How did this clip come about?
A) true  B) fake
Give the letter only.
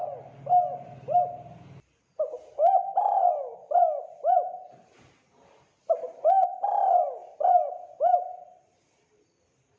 A